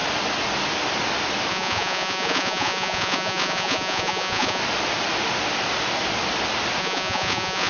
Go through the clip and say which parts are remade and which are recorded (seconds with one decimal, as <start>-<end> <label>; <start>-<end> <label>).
0.0-1.5 recorded; 1.5-4.6 remade; 4.6-6.8 recorded; 6.8-7.7 remade